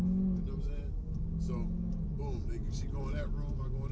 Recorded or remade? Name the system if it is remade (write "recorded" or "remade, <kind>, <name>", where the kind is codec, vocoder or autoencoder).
recorded